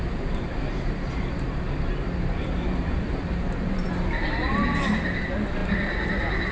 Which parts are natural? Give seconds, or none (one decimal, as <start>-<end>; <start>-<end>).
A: none